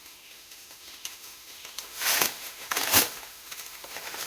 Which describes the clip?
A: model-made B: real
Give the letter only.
A